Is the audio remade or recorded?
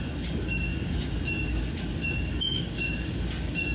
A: remade